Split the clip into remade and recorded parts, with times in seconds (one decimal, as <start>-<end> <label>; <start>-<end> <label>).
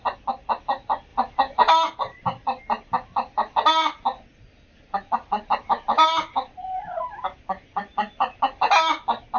0.0-1.1 recorded; 1.1-1.7 remade; 1.7-4.3 recorded; 4.3-8.6 remade; 8.6-9.4 recorded